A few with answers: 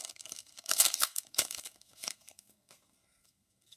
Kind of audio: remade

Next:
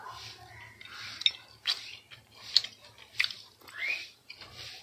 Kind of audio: recorded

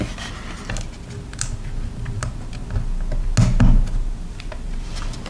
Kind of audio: recorded